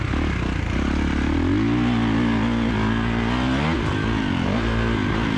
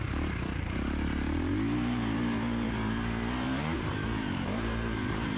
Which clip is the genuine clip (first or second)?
first